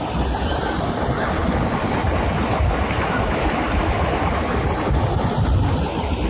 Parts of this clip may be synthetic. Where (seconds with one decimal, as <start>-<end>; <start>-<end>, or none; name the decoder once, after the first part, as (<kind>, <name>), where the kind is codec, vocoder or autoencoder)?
none